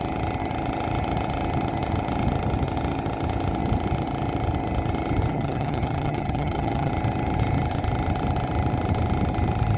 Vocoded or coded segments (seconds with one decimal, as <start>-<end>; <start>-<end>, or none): 5.3-6.9